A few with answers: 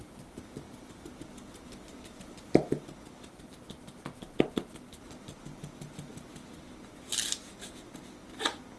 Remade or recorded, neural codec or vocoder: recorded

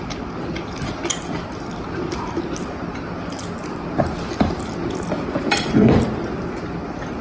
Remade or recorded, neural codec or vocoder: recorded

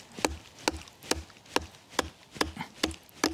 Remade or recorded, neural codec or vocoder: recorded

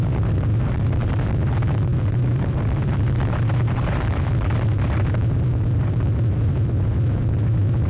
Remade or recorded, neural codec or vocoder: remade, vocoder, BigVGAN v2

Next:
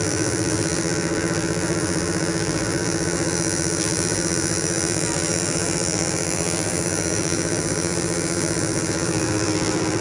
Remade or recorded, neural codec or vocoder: remade, vocoder, BigVGAN v2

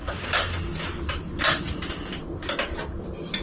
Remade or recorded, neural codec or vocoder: recorded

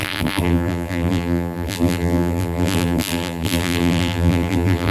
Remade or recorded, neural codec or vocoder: remade, vocoder, BigVGAN v2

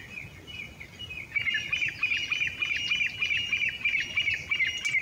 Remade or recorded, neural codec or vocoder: recorded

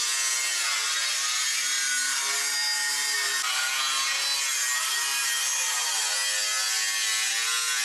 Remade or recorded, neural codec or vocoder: recorded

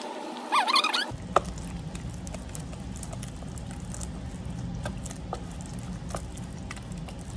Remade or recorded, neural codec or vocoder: recorded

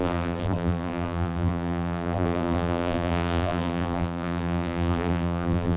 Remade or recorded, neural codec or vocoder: remade, vocoder, BigVGAN v2